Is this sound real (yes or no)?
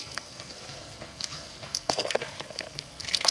no